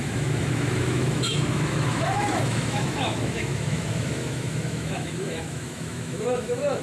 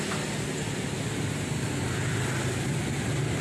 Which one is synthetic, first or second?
first